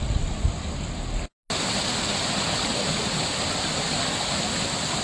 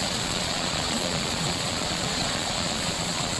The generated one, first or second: second